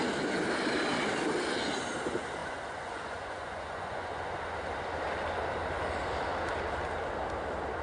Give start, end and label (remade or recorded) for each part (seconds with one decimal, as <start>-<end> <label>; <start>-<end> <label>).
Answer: 0.0-2.4 recorded; 2.4-4.4 remade; 4.4-7.8 recorded

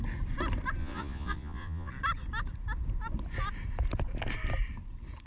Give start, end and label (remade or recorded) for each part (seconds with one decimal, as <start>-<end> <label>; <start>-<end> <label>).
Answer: 0.0-0.8 recorded; 0.8-1.9 remade; 1.9-5.3 recorded

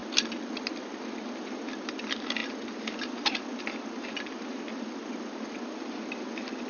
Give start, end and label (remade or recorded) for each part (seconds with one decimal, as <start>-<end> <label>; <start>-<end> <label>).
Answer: 0.0-6.7 recorded

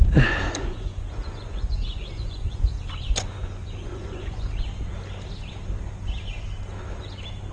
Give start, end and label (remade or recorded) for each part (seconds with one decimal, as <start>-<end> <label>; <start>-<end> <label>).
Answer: 0.0-4.5 remade; 4.5-7.5 recorded

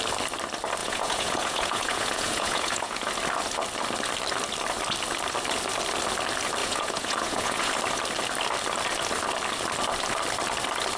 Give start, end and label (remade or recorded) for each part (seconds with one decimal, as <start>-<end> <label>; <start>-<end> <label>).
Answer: 0.0-0.8 recorded; 0.8-3.1 remade; 3.1-6.6 recorded; 6.6-7.7 remade; 7.7-11.0 recorded

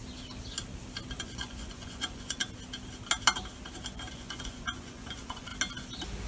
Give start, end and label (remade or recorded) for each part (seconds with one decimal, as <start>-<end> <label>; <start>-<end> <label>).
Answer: 0.0-1.2 recorded; 1.2-2.4 remade; 2.4-4.1 recorded; 4.1-5.5 remade; 5.5-6.3 recorded